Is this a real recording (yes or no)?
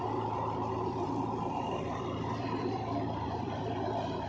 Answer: no